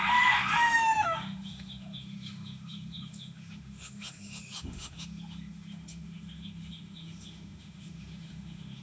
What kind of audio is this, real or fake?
fake